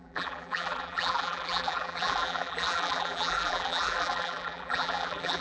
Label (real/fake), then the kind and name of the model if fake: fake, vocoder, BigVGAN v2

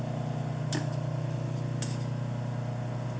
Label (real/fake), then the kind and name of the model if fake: real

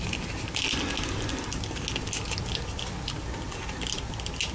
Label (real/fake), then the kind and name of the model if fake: real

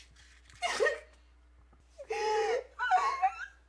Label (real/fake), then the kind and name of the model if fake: real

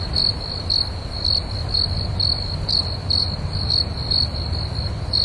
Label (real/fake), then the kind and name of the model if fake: real